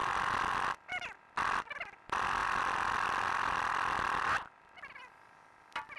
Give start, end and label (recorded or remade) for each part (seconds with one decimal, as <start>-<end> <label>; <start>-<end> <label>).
0.0-6.0 recorded